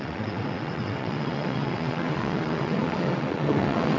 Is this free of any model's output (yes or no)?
no